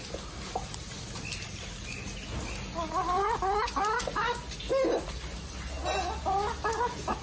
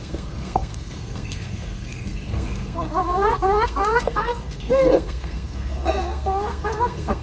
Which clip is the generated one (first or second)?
second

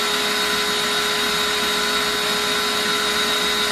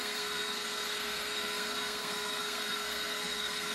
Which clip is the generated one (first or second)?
second